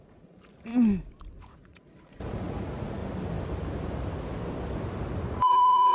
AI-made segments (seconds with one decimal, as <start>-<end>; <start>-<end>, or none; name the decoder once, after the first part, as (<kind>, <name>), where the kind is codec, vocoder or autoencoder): 0.0-0.7 (vocoder, Vocos); 1.4-3.0; 5.3-5.9